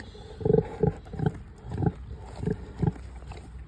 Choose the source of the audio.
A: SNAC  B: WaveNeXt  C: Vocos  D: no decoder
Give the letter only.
D